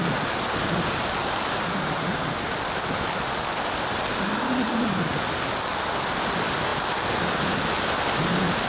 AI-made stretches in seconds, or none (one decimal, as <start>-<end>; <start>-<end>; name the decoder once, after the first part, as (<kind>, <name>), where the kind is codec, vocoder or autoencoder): none